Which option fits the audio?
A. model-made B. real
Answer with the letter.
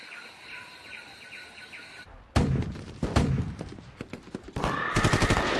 B